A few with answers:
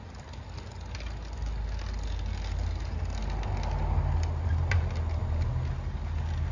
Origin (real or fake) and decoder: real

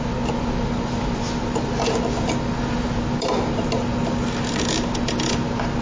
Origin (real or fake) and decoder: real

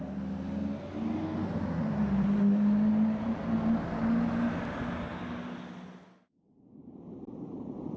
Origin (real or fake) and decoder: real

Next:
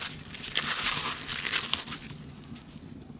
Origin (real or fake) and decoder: real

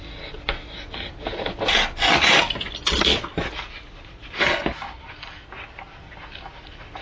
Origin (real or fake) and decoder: real